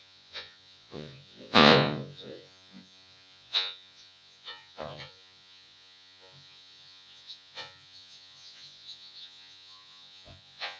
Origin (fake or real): fake